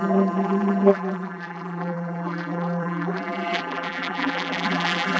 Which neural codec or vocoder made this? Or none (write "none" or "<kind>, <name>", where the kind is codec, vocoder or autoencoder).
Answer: vocoder, BigVGAN v2